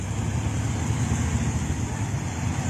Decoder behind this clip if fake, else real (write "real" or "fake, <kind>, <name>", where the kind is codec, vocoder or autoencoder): real